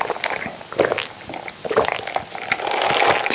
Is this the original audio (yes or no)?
yes